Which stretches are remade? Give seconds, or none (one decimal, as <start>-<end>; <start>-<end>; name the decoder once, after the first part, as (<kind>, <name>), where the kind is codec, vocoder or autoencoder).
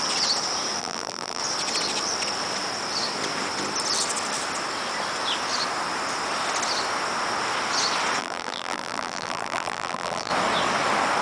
0.8-1.4 (vocoder, BigVGAN v2); 8.2-10.3